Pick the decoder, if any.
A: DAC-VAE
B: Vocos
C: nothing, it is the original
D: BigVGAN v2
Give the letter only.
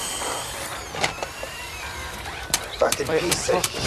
D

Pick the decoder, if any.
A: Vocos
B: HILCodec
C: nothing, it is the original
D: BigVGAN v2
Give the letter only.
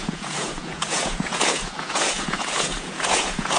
A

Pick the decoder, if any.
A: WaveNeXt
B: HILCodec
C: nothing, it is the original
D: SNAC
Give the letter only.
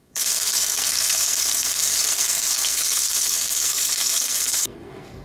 D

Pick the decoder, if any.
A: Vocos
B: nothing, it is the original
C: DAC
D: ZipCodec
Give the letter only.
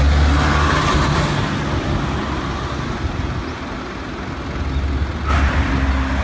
B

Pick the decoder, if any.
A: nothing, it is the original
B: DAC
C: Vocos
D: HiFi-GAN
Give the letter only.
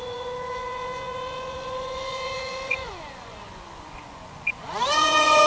C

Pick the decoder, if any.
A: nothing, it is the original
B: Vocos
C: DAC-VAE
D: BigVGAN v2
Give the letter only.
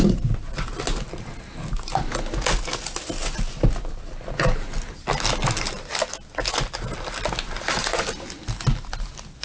A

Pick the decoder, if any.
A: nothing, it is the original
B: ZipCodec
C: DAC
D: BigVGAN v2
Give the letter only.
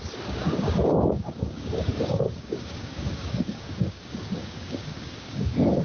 C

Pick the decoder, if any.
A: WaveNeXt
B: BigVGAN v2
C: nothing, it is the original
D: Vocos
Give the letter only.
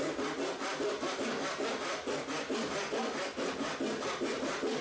C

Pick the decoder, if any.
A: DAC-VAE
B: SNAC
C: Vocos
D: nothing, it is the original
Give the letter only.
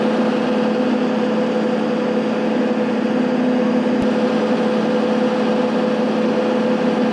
D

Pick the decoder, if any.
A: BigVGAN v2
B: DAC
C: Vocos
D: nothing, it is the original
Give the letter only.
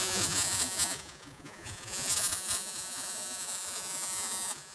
C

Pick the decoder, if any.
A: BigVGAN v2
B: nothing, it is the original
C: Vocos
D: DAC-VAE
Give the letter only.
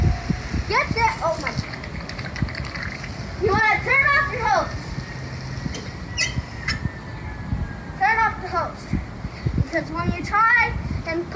B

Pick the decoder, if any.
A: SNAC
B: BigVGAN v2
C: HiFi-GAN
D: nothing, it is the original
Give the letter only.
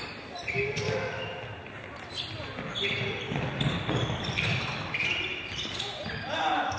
D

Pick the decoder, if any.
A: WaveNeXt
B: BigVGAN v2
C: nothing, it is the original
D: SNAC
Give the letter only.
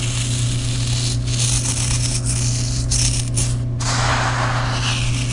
C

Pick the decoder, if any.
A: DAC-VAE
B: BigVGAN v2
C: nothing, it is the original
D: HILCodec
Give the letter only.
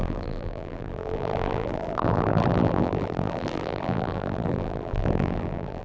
B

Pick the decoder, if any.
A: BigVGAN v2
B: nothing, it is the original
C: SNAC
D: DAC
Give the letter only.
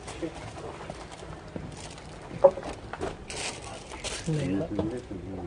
A